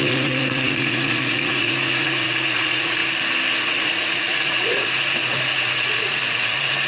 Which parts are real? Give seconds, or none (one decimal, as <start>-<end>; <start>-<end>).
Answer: 3.0-3.6